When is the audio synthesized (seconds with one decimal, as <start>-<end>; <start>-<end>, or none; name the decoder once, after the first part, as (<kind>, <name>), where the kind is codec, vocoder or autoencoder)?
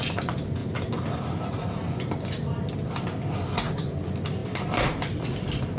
0.6-2.7 (vocoder, BigVGAN v2); 4.4-5.0